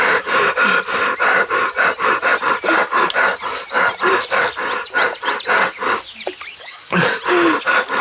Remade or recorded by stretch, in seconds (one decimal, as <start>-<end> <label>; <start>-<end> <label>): 0.0-6.5 recorded; 6.5-7.2 remade; 7.2-8.0 recorded